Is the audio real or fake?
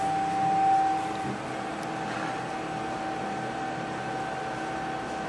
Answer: real